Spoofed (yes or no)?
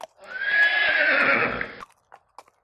no